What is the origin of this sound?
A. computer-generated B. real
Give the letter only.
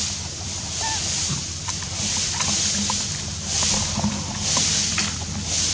B